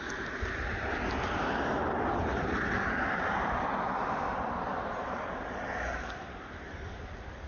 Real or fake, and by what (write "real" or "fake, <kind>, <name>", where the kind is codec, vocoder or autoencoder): real